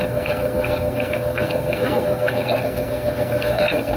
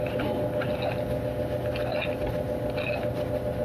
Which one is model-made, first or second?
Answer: first